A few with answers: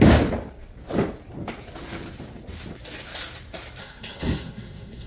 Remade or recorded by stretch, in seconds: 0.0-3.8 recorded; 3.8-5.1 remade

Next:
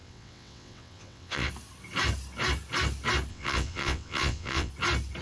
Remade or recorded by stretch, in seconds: 0.0-1.5 remade; 1.5-3.3 recorded; 3.3-4.7 remade; 4.7-5.2 recorded